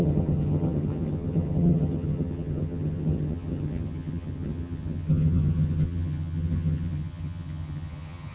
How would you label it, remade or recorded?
remade